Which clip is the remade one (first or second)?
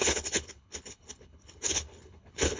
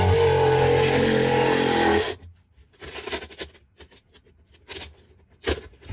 first